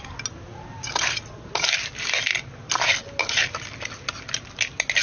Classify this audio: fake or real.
real